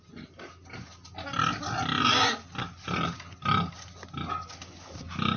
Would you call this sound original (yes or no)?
yes